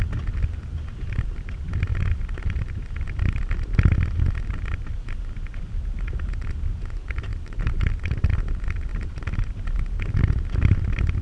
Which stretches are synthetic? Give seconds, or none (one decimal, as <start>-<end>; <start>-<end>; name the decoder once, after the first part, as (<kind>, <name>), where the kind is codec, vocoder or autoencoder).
1.9-2.4 (vocoder, BigVGAN v2); 7.3-8.3; 8.9-10.2